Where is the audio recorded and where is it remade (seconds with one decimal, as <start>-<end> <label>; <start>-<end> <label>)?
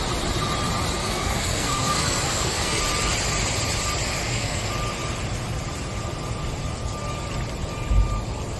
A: 0.0-1.0 recorded; 1.0-2.8 remade; 2.8-4.2 recorded; 4.2-4.7 remade; 4.7-8.6 recorded